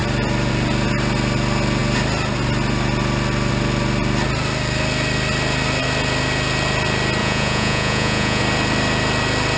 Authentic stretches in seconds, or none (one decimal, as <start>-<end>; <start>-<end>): 0.0-7.2; 8.4-9.6